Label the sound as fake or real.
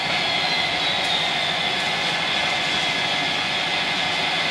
fake